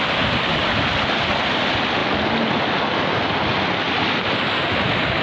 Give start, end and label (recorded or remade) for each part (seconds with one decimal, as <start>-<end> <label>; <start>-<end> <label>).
0.0-5.2 recorded